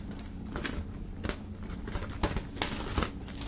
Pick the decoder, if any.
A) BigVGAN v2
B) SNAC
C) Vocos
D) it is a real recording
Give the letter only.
D